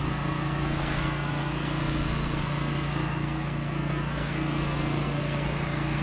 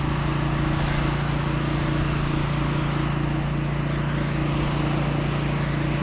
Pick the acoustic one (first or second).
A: second